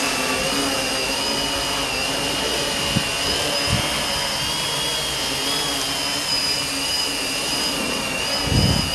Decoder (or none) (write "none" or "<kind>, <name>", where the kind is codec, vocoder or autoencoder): none